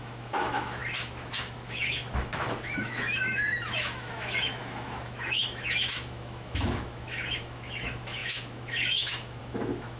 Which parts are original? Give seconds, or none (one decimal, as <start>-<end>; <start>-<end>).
none